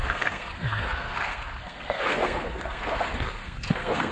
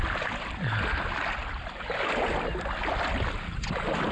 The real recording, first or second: second